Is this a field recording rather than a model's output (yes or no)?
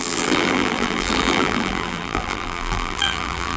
no